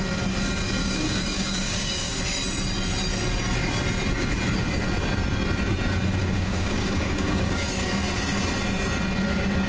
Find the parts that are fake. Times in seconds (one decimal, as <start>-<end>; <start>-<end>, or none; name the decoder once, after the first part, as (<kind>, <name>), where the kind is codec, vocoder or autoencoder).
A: 0.8-2.2 (codec, DAC); 6.2-7.7

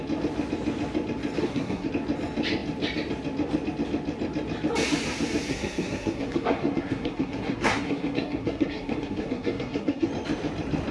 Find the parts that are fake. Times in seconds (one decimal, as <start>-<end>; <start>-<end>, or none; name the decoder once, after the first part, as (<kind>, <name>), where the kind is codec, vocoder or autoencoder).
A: 1.4-1.9 (codec, SNAC); 5.5-10.1

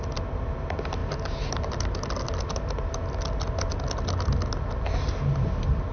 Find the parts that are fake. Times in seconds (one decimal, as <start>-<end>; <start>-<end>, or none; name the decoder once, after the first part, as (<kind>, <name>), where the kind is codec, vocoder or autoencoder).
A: none

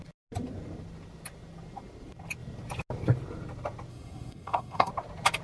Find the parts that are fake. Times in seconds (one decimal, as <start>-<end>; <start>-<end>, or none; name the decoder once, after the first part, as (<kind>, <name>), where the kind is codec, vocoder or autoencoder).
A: 3.9-4.9 (codec, SNAC)